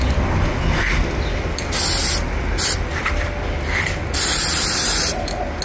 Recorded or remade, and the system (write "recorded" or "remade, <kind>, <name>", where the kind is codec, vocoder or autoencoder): recorded